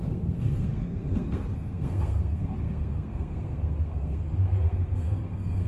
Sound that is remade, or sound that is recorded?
remade